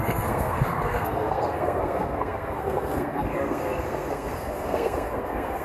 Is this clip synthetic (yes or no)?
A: yes